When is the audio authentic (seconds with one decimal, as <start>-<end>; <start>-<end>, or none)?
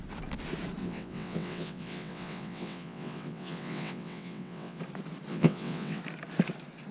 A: 0.0-0.8; 4.8-5.3; 6.0-6.9